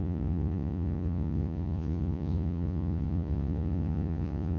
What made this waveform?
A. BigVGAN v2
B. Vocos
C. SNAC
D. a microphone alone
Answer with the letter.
B